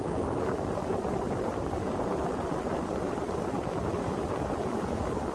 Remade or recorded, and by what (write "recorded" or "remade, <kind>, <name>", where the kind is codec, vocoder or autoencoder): remade, vocoder, BigVGAN v2